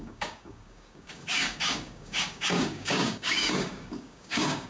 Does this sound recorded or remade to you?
remade